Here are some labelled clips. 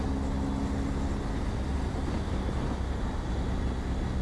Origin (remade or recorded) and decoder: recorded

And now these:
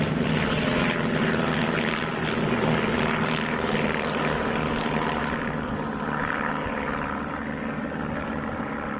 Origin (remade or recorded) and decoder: recorded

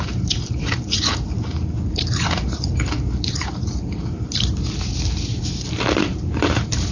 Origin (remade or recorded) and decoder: remade, vocoder, BigVGAN v2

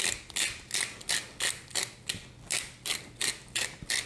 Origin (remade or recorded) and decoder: recorded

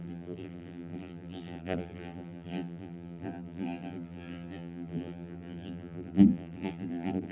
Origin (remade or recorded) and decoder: remade, vocoder, BigVGAN v2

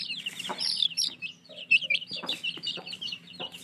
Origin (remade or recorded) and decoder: remade, vocoder, BigVGAN v2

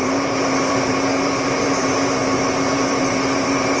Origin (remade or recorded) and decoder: remade, vocoder, BigVGAN v2